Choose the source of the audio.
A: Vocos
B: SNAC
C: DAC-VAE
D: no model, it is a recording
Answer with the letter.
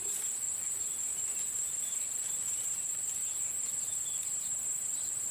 D